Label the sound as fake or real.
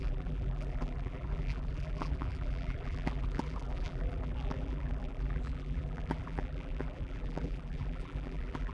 fake